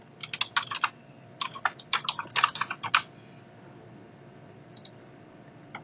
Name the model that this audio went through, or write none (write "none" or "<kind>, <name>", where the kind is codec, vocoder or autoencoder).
none